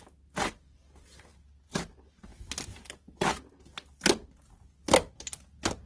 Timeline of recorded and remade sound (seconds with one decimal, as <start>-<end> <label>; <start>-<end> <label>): 0.0-5.9 recorded